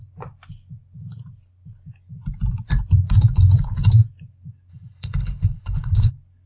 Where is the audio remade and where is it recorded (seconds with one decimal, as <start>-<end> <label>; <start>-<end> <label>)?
0.0-4.7 recorded; 4.7-6.1 remade; 6.1-6.5 recorded